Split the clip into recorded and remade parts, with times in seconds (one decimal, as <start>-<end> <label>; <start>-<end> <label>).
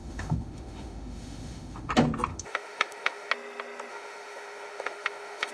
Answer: 0.0-1.9 remade; 1.9-2.3 recorded; 2.3-3.3 remade; 3.3-3.9 recorded; 3.9-5.5 remade